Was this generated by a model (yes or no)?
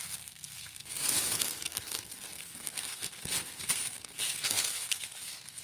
yes